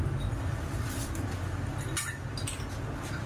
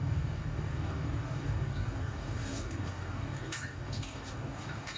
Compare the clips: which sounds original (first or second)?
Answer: first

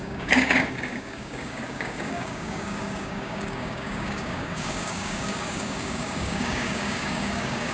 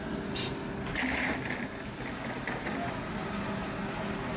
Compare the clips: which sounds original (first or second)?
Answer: second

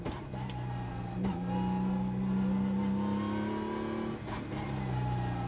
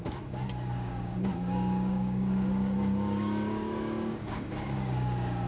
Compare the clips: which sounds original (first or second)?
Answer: first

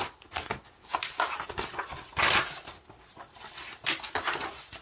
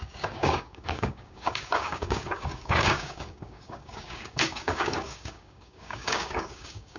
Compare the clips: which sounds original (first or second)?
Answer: first